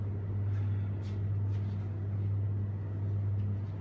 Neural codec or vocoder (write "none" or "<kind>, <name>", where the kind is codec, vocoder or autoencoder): none